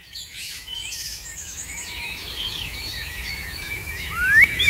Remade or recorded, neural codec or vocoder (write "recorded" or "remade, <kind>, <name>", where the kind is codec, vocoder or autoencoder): remade, autoencoder, DAC-VAE